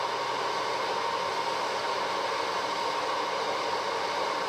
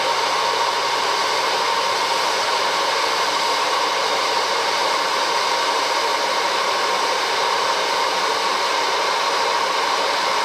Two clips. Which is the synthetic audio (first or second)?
second